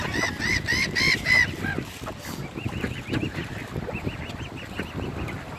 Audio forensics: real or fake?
real